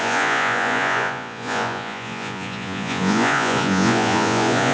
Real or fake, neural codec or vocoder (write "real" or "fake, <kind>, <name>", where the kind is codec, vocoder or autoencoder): fake, vocoder, Vocos